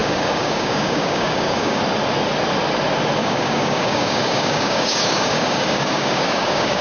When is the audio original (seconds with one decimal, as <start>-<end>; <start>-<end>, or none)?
1.8-3.2